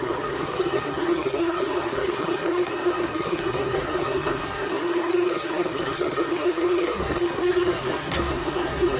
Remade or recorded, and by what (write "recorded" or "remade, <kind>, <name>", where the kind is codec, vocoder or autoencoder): remade, codec, SNAC